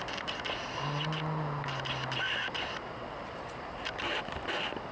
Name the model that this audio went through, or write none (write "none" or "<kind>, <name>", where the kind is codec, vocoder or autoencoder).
none